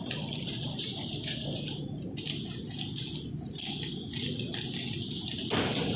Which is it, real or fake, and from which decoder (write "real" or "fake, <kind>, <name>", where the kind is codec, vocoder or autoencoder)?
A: real